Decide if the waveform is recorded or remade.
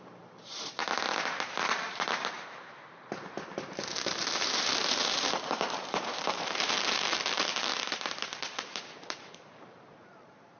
remade